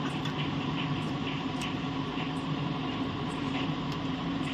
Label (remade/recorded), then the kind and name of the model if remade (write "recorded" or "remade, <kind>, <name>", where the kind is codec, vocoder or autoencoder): remade, vocoder, BigVGAN v2